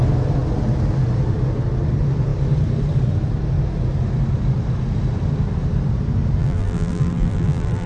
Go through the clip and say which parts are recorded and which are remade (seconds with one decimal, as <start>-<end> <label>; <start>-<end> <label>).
0.0-6.4 recorded; 6.4-7.9 remade